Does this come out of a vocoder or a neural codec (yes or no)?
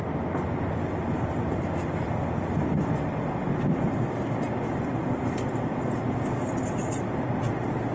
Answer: no